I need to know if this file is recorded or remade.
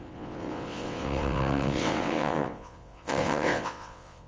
remade